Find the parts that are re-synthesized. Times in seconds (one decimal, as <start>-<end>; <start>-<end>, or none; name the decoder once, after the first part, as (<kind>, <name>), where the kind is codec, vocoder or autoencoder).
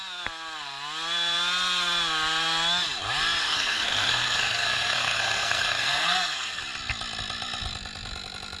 3.4-6.6 (codec, SNAC)